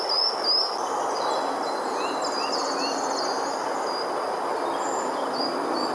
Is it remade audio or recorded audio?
recorded